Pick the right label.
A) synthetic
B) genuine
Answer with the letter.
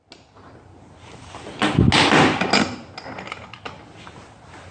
B